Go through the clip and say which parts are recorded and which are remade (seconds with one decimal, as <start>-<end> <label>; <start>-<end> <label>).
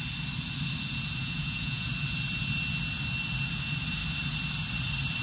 0.0-1.2 recorded; 1.2-1.9 remade; 1.9-5.2 recorded